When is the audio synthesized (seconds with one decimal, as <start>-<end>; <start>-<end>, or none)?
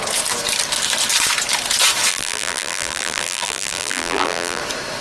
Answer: 2.1-4.6